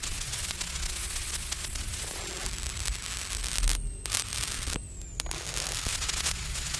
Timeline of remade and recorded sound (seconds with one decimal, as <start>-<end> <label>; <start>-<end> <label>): 0.0-2.2 remade; 2.2-5.9 recorded; 5.9-6.8 remade